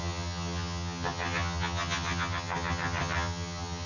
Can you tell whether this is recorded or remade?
remade